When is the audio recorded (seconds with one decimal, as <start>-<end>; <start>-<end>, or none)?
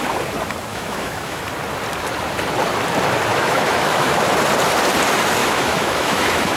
0.0-0.7; 1.4-3.3; 4.2-5.4